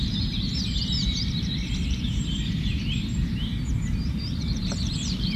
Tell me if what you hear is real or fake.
fake